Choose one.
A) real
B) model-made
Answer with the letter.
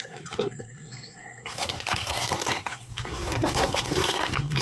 B